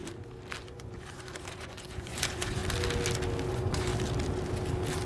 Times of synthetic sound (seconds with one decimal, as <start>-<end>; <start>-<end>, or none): 0.6-2.6; 3.5-3.9